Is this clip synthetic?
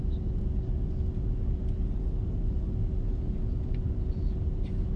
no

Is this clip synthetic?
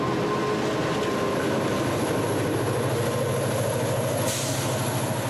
no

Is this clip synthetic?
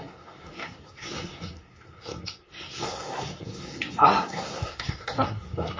yes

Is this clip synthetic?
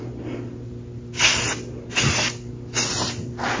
no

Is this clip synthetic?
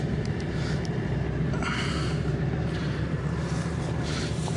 yes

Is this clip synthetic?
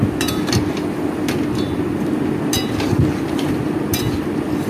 no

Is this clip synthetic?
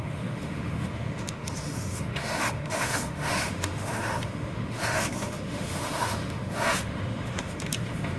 yes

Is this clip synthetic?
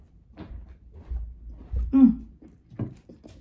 no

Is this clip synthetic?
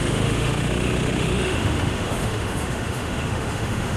yes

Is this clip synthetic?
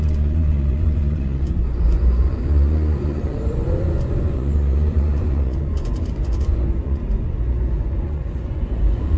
yes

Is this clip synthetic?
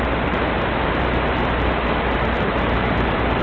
yes